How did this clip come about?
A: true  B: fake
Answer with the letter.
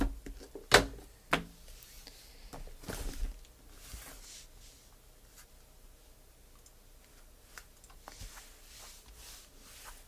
A